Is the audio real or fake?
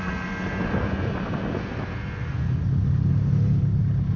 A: real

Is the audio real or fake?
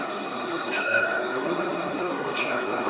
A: fake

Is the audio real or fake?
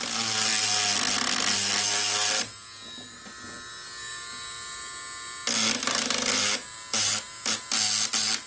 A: real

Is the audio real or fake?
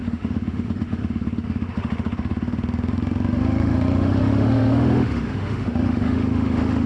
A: fake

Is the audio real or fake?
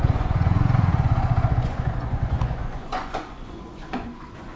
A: fake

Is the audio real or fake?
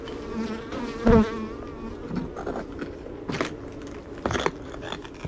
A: real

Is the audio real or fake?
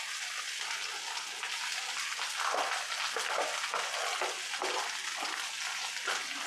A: real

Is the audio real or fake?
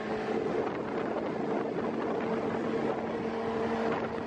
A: real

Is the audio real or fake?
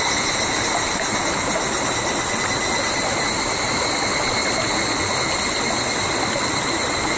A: real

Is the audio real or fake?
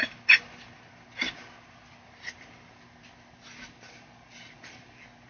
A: real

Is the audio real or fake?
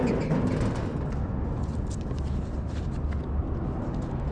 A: real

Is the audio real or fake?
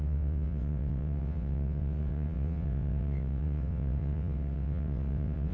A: fake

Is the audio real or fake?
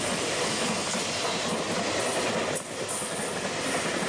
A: real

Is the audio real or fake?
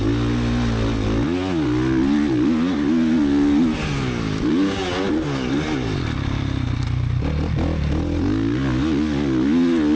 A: real